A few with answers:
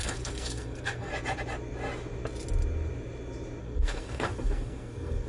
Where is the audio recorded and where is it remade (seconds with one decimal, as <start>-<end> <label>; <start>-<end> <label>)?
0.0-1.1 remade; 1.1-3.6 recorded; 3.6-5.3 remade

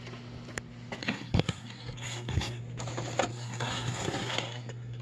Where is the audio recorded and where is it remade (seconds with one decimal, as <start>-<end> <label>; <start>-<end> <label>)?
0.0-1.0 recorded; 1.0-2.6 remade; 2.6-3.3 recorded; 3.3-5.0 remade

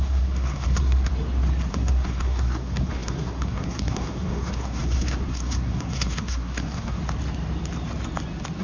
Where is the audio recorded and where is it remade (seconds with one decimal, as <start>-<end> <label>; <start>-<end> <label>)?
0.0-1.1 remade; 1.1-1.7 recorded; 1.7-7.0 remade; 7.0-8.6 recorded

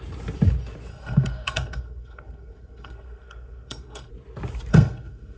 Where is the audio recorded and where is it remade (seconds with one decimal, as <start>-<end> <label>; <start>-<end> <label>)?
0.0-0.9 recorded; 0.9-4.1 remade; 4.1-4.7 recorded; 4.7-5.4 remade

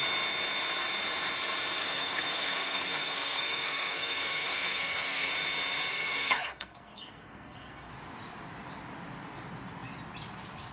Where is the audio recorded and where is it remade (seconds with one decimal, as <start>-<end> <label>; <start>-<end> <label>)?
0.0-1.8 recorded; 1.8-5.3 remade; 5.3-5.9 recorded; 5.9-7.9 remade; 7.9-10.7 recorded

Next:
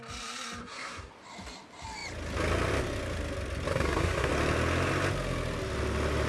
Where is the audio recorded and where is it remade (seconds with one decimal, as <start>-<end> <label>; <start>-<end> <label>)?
0.0-0.6 recorded; 0.6-1.1 remade; 1.1-3.7 recorded; 3.7-4.3 remade; 4.3-6.3 recorded

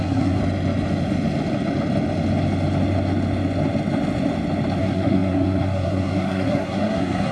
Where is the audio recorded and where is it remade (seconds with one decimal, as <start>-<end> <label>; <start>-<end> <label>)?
0.0-0.4 remade; 0.4-4.8 recorded; 4.8-7.3 remade

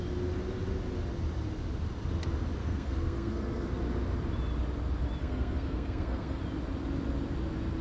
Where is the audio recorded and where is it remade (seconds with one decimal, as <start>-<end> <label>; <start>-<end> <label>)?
0.0-2.6 recorded; 2.6-3.7 remade; 3.7-5.2 recorded; 5.2-6.4 remade; 6.4-7.8 recorded